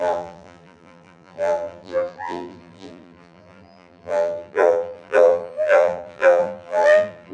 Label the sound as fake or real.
fake